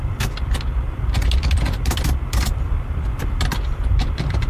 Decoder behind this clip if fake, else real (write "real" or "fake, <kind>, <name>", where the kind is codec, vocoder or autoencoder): real